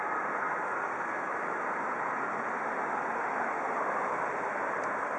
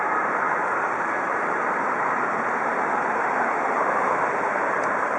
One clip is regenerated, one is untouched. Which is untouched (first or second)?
first